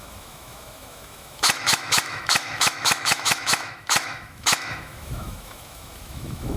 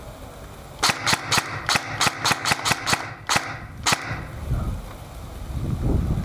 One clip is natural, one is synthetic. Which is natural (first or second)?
second